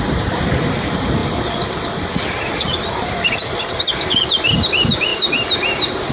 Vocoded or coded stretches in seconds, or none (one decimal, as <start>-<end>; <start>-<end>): none